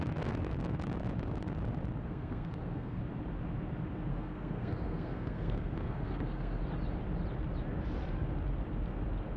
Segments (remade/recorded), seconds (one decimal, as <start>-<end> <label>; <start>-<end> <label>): 0.0-2.0 recorded; 2.0-3.0 remade; 3.0-4.1 recorded; 4.1-6.6 remade; 6.6-9.4 recorded